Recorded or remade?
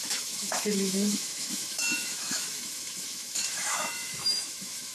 remade